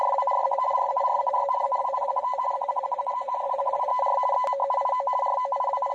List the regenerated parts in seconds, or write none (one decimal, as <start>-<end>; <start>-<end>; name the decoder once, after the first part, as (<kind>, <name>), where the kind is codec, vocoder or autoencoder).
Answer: 0.4-3.9 (vocoder, Vocos)

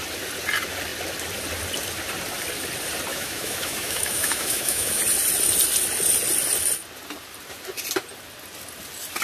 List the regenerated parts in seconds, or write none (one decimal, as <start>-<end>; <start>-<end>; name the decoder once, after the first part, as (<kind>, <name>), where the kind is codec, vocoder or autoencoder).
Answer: 3.1-5.0 (autoencoder, DAC-VAE)

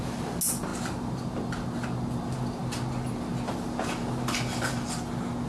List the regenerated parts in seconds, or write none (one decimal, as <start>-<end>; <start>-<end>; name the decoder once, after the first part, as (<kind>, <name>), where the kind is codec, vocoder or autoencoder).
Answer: none

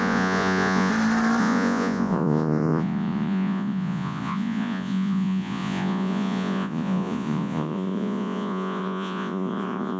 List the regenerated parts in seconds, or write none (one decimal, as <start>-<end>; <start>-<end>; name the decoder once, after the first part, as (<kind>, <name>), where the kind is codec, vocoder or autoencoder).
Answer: 0.0-0.9 (vocoder, Vocos); 1.4-10.0

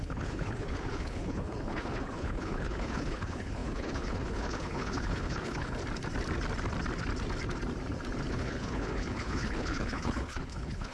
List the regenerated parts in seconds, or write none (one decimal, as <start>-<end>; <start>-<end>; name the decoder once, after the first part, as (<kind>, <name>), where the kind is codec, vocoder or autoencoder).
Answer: 0.0-5.8 (codec, HILCodec); 8.3-10.9